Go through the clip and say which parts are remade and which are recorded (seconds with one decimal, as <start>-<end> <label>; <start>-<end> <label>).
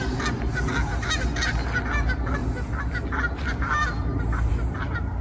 0.0-5.2 recorded